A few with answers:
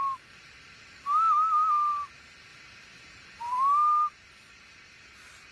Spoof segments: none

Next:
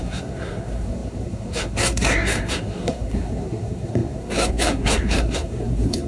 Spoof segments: 0.0-6.1 (codec, SNAC)

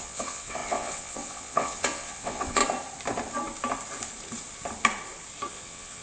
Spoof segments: 0.0-2.6 (vocoder, WaveNeXt); 5.5-6.0

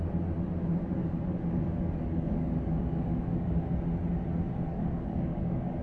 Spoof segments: 1.0-3.6 (codec, DAC); 4.7-5.8

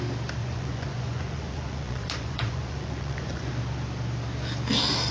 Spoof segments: 0.4-3.5 (vocoder, Vocos)

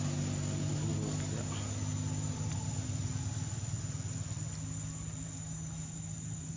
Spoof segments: none

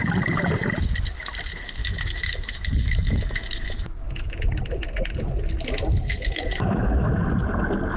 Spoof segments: 1.8-4.5 (autoencoder, DAC-VAE); 6.1-7.1